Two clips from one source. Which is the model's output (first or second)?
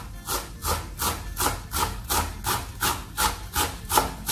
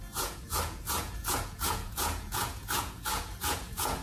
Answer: second